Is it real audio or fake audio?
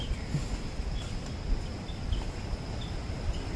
real